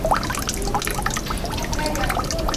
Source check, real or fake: real